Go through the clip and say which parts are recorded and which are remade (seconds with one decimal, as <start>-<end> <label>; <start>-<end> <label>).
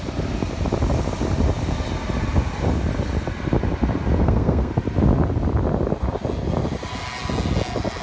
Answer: 0.0-4.2 recorded; 4.2-4.7 remade; 4.7-8.0 recorded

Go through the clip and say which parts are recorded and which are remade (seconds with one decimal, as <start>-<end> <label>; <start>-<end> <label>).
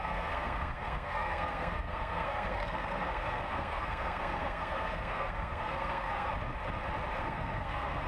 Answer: 0.0-6.3 remade; 6.3-7.2 recorded; 7.2-8.1 remade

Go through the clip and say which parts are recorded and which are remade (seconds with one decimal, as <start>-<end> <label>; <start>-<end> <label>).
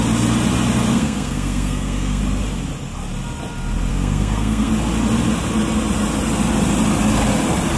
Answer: 0.0-0.9 recorded; 0.9-2.2 remade; 2.2-3.9 recorded; 3.9-4.7 remade; 4.7-7.8 recorded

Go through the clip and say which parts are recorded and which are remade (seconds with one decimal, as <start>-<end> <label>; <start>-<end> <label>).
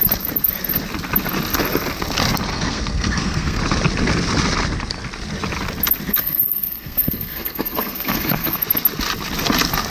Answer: 0.0-2.5 recorded; 2.5-3.6 remade; 3.6-6.1 recorded; 6.1-8.6 remade; 8.6-9.9 recorded